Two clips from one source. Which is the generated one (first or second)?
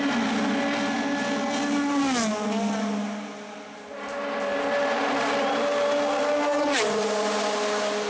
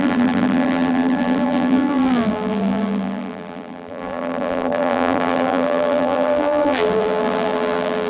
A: second